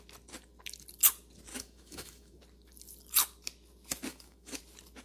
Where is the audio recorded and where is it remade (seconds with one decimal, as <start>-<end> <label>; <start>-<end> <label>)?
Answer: 0.0-1.5 recorded; 1.5-2.4 remade; 2.4-4.1 recorded; 4.1-4.6 remade; 4.6-5.0 recorded

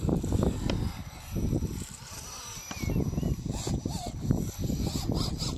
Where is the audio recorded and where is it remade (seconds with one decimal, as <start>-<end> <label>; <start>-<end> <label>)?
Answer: 0.0-5.6 recorded